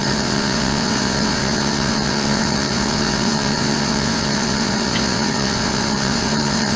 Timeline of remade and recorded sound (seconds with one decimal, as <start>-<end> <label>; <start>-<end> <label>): 0.0-6.8 remade

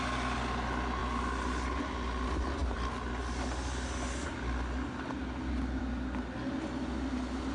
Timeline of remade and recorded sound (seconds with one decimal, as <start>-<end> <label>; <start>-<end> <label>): 0.0-7.5 recorded

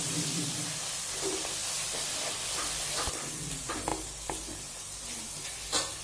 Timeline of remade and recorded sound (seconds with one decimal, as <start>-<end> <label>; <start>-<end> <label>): 0.0-6.0 remade

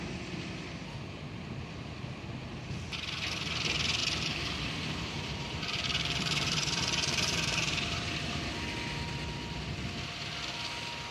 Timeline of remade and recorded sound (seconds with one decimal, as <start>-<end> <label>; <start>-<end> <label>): 0.0-4.0 recorded; 4.0-8.5 remade; 8.5-11.1 recorded